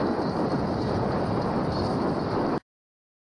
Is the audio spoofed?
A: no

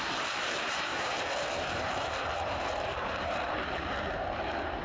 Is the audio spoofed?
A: yes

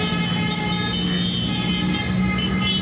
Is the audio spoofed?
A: no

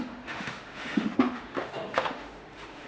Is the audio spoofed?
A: yes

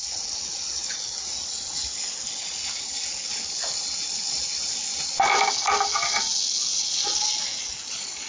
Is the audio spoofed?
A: no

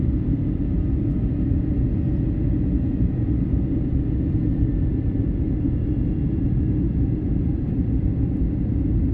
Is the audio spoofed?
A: no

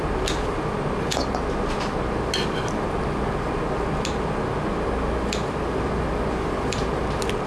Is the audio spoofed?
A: no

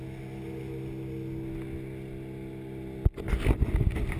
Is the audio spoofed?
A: no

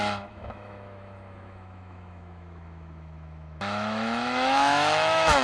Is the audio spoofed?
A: yes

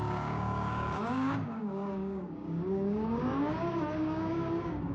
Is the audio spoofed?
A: yes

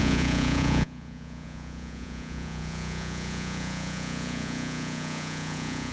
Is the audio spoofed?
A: yes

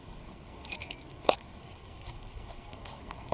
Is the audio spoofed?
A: yes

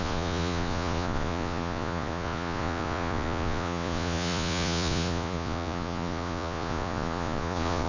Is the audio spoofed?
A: yes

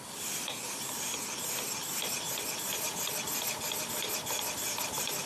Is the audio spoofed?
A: no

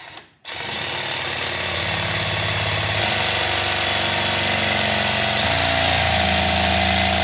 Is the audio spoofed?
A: no